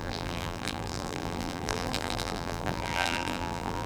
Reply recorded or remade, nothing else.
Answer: remade